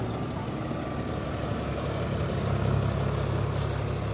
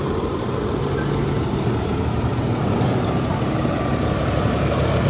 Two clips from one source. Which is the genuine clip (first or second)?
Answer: first